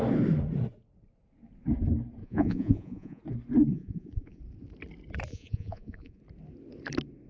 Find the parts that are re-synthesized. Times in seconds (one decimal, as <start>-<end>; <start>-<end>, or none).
2.2-3.2; 3.7-4.4; 5.3-6.2